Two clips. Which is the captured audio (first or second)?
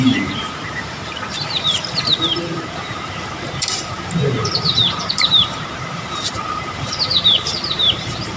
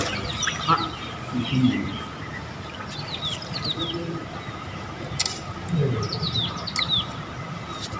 second